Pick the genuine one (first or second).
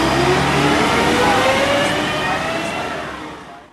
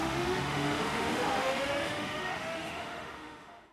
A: first